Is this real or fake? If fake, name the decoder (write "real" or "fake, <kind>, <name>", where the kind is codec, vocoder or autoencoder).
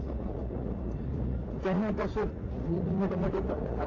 fake, vocoder, Vocos